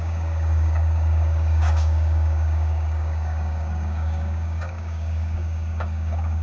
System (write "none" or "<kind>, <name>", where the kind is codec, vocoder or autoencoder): codec, DAC